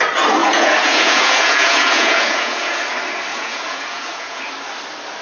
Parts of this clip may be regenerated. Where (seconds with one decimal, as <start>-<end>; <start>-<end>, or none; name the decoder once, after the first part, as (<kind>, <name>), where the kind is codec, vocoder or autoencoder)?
0.4-2.8 (vocoder, Vocos); 3.3-4.4